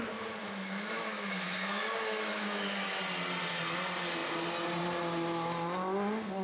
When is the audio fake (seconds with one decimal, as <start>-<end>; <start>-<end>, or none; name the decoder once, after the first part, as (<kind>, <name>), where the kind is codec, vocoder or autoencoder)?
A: 0.4-3.0 (autoencoder, DAC-VAE)